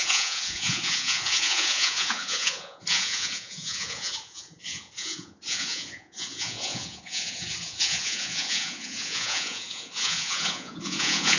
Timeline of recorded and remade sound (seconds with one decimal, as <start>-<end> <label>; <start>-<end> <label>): 0.0-11.4 remade